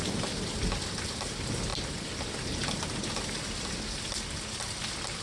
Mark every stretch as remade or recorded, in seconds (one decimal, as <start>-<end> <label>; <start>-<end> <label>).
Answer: 0.0-5.2 recorded